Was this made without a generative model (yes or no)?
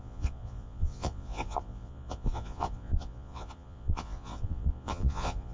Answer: no